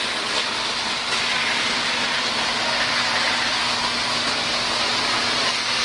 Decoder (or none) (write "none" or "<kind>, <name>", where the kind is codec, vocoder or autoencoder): none